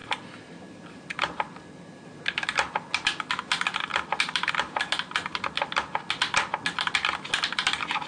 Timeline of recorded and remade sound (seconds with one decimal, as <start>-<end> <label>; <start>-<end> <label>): 0.0-8.1 recorded